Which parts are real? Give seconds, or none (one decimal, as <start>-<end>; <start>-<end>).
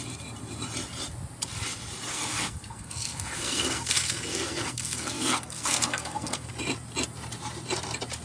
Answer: 0.0-2.1; 6.5-8.2